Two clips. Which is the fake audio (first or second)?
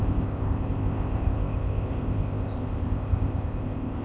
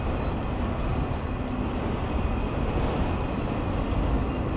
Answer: first